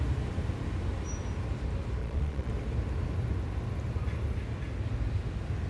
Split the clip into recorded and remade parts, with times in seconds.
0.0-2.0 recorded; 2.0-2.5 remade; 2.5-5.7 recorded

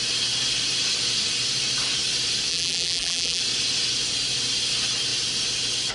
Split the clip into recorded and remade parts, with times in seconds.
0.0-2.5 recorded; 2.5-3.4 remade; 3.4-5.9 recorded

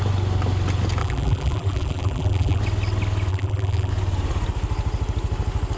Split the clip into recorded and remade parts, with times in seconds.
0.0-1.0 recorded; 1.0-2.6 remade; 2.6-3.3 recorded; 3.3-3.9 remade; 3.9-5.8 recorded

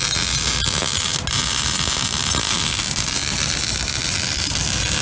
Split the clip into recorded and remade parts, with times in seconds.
0.0-5.0 recorded

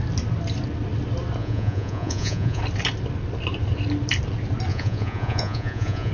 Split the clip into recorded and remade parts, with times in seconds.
0.0-1.4 recorded; 1.4-2.6 remade; 2.6-4.7 recorded; 4.7-6.1 remade

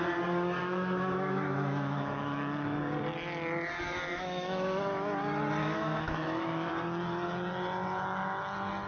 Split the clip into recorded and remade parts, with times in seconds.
0.0-0.6 recorded; 0.6-2.8 remade; 2.8-4.1 recorded; 4.1-4.8 remade; 4.8-5.6 recorded; 5.6-6.7 remade; 6.7-8.9 recorded